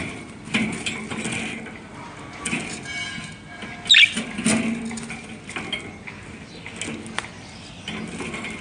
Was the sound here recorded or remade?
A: recorded